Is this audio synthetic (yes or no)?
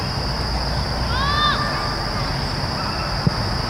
no